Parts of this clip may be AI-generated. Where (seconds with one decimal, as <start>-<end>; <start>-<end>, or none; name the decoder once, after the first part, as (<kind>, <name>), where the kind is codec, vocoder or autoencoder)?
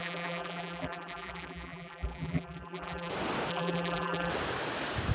0.0-3.1 (vocoder, BigVGAN v2); 3.5-4.3